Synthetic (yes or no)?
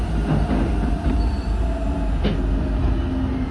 no